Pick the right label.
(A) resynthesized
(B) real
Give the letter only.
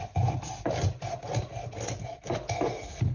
B